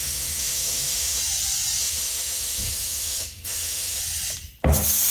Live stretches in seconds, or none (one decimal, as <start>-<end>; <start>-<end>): 1.2-1.8; 4.0-5.1

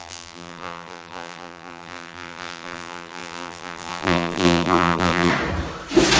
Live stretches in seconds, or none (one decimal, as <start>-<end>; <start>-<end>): 5.3-6.2